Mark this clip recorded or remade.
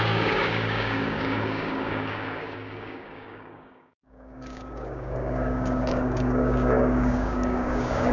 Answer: remade